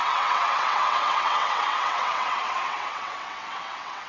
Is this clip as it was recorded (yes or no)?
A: no